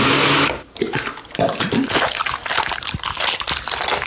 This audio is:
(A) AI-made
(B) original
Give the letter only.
B